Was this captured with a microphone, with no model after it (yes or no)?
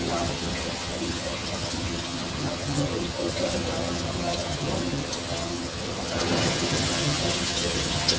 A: no